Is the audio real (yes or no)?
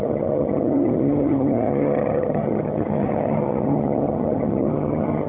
no